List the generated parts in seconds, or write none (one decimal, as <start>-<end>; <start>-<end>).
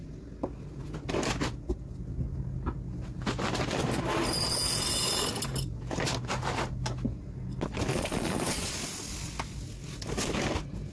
7.9-8.7